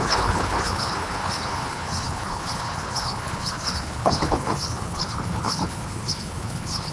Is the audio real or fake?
fake